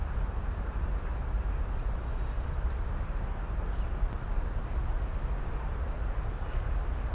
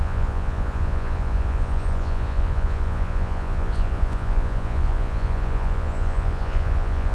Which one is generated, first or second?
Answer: second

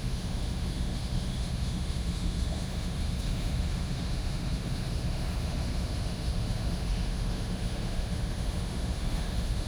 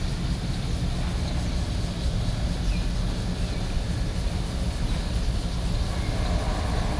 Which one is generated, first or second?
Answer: first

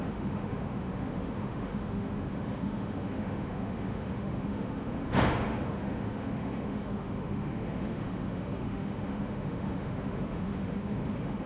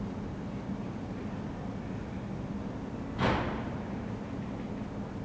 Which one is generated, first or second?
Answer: first